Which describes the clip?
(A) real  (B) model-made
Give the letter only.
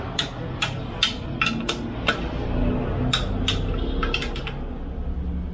A